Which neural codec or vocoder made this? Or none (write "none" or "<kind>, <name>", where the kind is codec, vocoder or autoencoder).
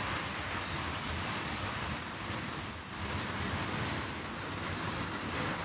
none